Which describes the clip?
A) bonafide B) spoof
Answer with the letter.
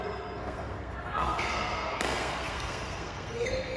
B